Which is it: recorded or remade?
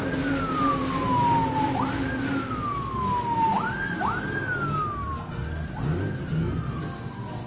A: recorded